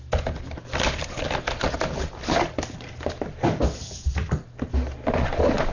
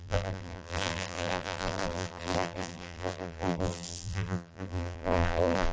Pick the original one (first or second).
first